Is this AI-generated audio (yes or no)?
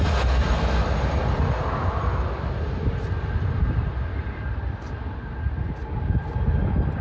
no